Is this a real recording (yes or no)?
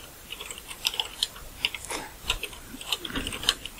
no